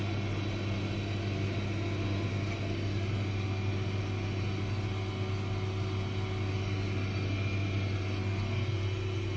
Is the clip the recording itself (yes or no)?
yes